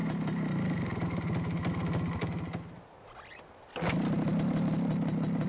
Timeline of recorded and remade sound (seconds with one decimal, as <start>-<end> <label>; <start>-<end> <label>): 0.0-5.5 recorded